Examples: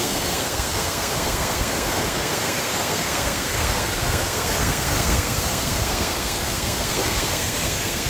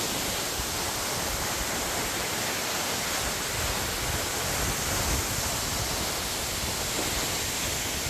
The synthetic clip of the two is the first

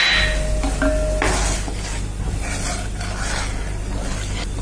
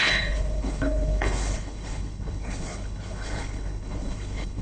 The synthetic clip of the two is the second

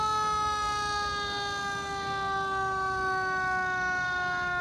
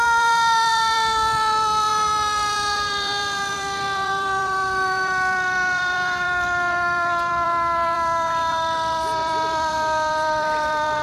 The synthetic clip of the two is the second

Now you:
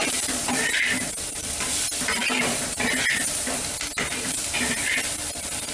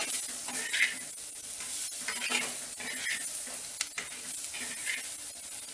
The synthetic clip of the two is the first